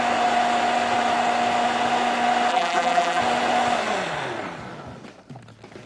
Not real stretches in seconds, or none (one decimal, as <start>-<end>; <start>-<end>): 2.5-3.2